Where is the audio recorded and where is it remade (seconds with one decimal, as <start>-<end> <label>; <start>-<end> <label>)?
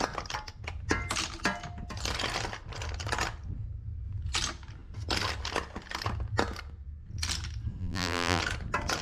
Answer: 0.0-7.8 recorded; 7.8-8.4 remade; 8.4-9.0 recorded